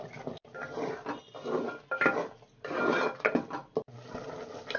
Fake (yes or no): no